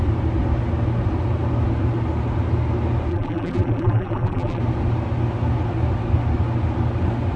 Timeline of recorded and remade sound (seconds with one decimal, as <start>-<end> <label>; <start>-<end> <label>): 0.0-3.1 recorded; 3.1-4.6 remade; 4.6-7.4 recorded